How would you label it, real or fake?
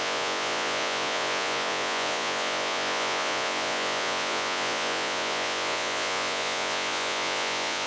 fake